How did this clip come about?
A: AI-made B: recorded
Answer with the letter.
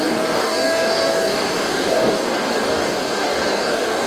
A